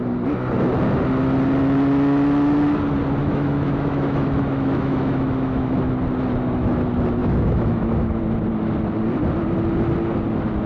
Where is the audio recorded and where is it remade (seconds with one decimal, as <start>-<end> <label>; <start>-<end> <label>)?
0.0-3.2 recorded; 3.2-5.8 remade; 5.8-7.2 recorded; 7.2-8.2 remade; 8.2-10.7 recorded